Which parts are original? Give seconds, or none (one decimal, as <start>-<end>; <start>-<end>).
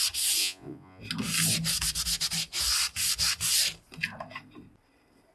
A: 0.0-0.4; 1.0-5.3